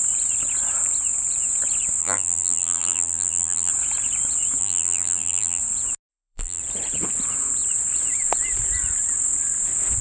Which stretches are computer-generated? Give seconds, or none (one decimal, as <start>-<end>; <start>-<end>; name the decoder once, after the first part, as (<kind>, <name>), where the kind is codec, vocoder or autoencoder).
2.0-3.7 (vocoder, BigVGAN v2); 4.6-5.6; 6.1-6.6